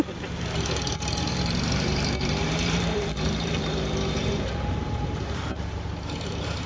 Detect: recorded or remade remade